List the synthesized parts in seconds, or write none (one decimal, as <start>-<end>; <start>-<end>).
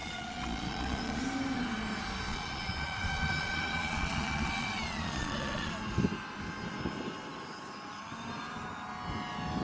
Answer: 0.0-1.2; 2.3-5.7